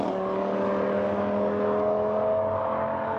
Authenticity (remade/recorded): remade